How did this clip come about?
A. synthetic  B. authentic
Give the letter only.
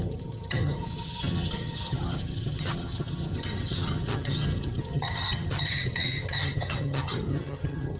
A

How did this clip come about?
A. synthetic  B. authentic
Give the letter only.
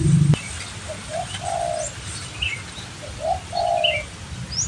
B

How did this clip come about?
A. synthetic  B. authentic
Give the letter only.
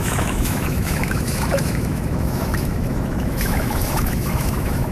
A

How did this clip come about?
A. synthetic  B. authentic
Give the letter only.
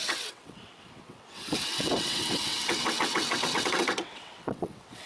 A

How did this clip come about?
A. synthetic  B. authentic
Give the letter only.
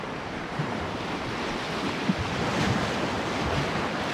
B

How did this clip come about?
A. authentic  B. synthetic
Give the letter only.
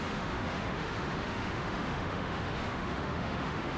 B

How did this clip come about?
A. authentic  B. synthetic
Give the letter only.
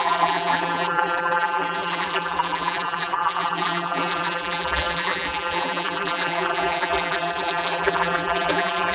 B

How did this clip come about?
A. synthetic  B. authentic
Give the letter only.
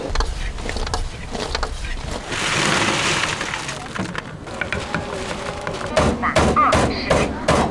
B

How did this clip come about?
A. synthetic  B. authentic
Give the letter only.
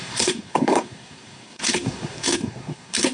A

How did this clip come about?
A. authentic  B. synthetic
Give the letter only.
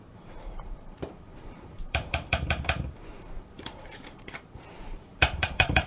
B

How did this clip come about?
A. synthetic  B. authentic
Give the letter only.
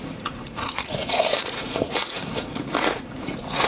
A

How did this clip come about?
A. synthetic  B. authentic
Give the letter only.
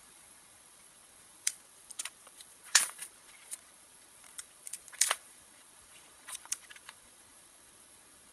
A